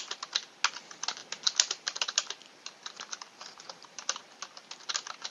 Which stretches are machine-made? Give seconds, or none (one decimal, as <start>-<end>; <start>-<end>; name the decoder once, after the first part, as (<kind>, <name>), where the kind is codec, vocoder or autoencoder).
1.2-4.4 (vocoder, BigVGAN v2)